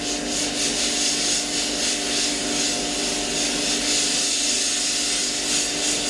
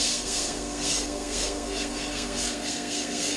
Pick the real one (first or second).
first